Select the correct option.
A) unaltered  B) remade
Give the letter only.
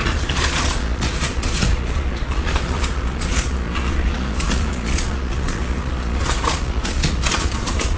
B